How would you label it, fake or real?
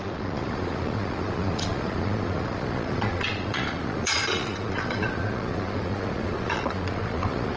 fake